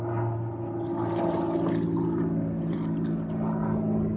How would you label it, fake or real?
real